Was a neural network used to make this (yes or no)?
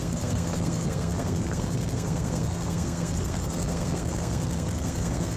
yes